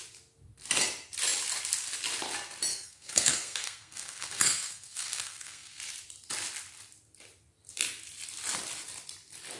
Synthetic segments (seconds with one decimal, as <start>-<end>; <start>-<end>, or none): 2.7-5.8